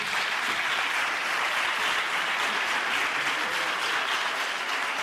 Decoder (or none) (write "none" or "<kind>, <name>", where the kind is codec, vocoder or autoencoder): vocoder, BigVGAN v2